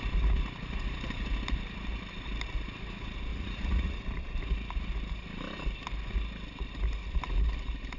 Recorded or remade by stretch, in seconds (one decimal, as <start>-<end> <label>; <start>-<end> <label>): 0.0-3.3 recorded; 3.3-4.0 remade; 4.0-8.0 recorded